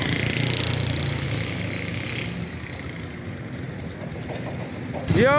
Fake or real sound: real